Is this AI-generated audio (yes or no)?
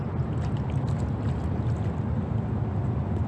no